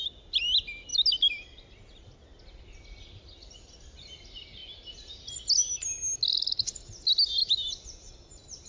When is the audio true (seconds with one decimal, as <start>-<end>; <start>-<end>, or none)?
0.0-8.7

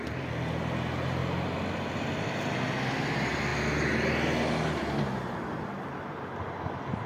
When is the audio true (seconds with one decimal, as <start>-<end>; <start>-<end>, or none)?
0.0-7.1

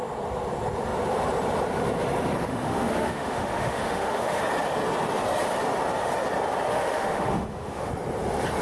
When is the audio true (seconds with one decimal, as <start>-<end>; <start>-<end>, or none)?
0.0-2.5; 4.4-6.7; 7.9-8.6

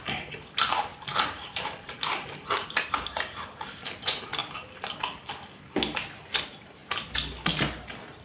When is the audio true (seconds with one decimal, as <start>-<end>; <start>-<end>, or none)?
0.0-0.9; 3.3-8.2

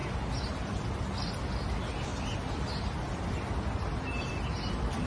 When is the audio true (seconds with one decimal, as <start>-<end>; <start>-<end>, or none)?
0.0-5.1

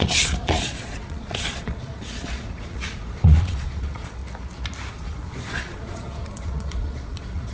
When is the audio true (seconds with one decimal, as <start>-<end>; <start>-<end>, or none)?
4.2-4.9